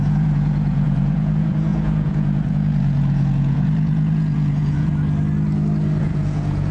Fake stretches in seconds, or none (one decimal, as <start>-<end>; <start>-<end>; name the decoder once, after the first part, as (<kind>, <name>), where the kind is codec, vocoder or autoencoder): 0.0-4.9 (vocoder, Vocos); 6.0-6.7